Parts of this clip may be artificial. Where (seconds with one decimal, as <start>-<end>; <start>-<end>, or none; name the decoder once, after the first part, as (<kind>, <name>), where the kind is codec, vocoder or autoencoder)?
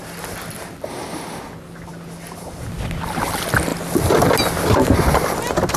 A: none